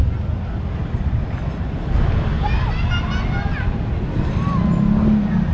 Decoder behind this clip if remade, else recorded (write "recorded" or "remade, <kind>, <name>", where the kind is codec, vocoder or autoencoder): recorded